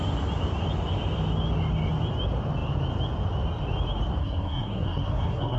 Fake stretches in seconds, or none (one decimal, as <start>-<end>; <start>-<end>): 4.2-5.6